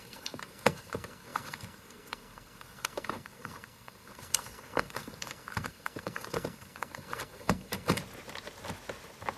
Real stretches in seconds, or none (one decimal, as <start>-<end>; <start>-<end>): 8.0-9.4

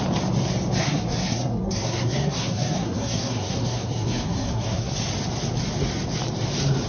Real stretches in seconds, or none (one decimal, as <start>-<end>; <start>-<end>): 0.0-0.8; 4.9-6.9